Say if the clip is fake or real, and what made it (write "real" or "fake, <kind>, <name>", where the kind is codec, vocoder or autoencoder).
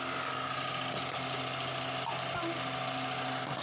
real